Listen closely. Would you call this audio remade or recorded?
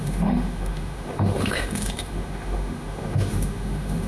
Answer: remade